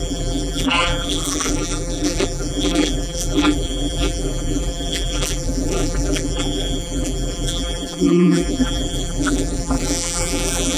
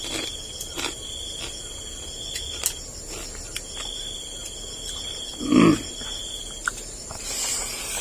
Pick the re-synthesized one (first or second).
first